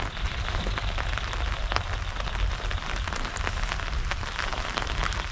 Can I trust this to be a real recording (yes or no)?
yes